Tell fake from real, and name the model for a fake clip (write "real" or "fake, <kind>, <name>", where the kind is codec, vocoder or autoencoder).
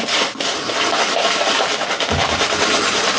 real